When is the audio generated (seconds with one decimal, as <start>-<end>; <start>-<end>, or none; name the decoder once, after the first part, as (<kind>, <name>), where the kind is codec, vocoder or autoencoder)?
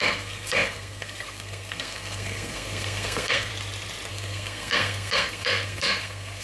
0.0-3.5 (codec, SNAC); 4.1-6.4